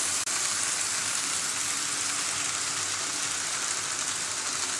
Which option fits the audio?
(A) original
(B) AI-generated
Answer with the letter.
A